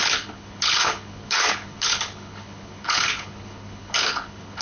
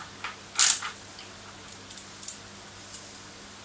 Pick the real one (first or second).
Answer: second